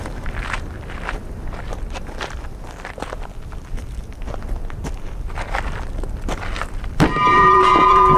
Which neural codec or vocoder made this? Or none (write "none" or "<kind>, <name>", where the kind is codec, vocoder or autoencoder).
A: vocoder, BigVGAN v2